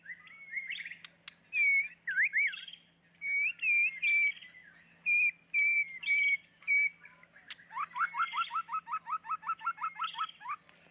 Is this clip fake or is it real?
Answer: real